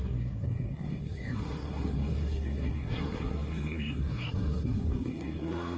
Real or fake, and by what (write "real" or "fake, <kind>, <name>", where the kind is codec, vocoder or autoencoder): fake, codec, SNAC